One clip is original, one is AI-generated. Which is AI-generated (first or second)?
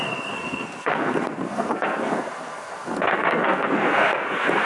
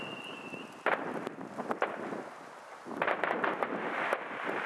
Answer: first